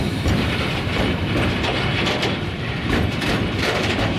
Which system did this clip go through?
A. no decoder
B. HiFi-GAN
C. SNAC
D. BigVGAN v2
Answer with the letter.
D